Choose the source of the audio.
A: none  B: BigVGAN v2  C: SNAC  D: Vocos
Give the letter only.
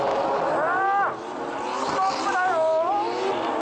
A